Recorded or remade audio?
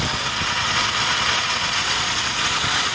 remade